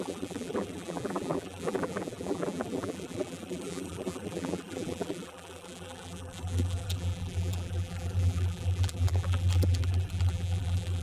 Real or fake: fake